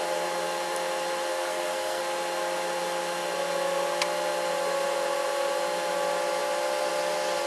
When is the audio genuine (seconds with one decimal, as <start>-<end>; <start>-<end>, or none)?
0.0-1.3; 2.0-7.5